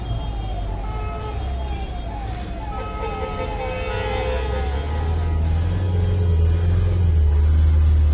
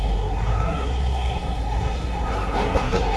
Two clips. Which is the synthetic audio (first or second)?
second